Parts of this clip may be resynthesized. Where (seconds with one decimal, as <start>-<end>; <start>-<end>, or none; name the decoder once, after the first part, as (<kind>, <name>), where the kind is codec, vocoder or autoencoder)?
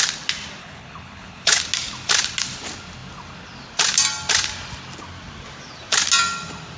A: 0.6-1.6 (codec, HILCodec)